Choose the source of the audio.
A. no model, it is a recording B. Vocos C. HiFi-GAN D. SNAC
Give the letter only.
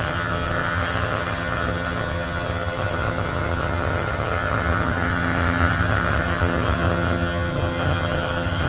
C